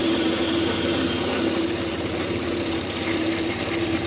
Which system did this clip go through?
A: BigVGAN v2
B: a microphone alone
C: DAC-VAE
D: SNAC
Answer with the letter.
A